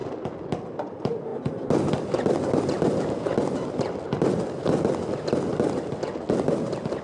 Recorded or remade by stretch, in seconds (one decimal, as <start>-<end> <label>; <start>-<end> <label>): 0.0-7.0 recorded

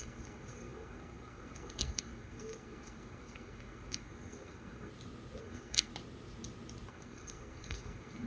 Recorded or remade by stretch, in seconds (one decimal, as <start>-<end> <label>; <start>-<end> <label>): 0.0-4.9 remade; 4.9-5.4 recorded; 5.4-5.9 remade; 5.9-6.9 recorded; 6.9-8.3 remade